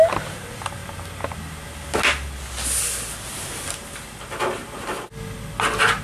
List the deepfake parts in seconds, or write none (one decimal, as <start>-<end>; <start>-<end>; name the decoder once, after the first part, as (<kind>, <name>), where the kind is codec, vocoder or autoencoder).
none